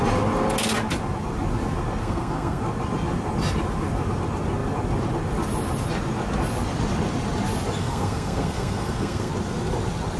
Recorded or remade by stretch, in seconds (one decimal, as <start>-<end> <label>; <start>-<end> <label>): 0.0-2.0 recorded; 2.0-2.6 remade; 2.6-7.8 recorded; 7.8-9.3 remade; 9.3-10.2 recorded